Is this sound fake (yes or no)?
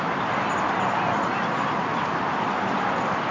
no